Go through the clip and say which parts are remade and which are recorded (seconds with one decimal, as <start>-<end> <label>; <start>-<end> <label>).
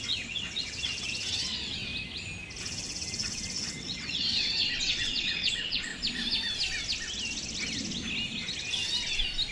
0.0-1.9 remade; 1.9-2.6 recorded; 2.6-5.9 remade; 5.9-9.5 recorded